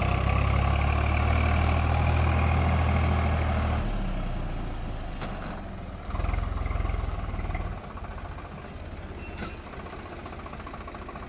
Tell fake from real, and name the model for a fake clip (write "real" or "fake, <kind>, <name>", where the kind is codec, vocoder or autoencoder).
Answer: real